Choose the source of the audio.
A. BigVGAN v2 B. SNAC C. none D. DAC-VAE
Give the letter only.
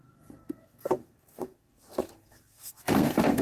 B